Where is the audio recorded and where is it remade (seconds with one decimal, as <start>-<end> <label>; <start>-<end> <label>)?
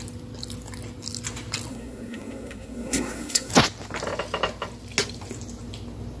0.0-1.7 recorded; 1.7-3.5 remade; 3.5-6.2 recorded